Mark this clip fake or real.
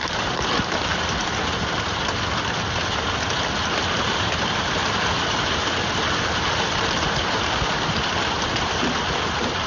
real